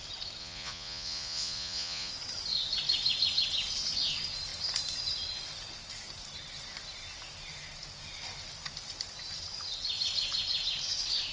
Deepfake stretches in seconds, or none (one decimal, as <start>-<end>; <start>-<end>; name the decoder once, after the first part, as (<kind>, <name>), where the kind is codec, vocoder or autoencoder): 0.4-2.1 (vocoder, Vocos)